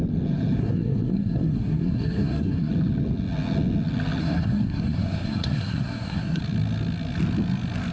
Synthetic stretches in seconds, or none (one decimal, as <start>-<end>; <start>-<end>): 0.6-2.7; 4.2-6.4